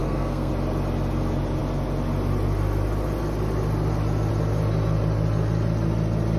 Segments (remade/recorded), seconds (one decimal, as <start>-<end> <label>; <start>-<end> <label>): 0.0-0.5 remade; 0.5-6.4 recorded